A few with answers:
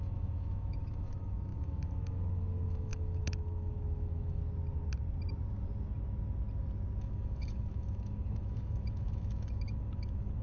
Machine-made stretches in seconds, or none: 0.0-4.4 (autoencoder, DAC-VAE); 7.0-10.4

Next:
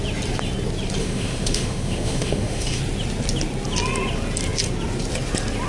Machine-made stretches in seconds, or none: 1.0-2.8 (autoencoder, DAC-VAE)

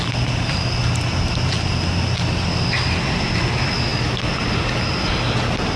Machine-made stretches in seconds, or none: none

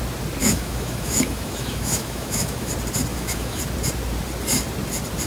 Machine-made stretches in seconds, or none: 0.4-2.7 (autoencoder, DAC-VAE); 3.1-3.6

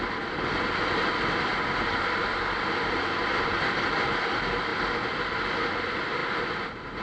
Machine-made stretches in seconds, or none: none

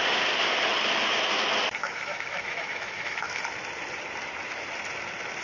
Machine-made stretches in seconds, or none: 1.8-3.4 (autoencoder, DAC-VAE)

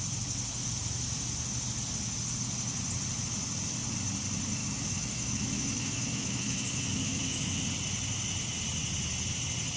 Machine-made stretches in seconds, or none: 4.6-7.6 (autoencoder, DAC-VAE)